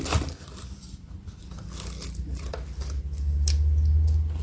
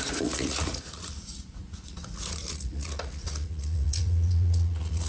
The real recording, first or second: first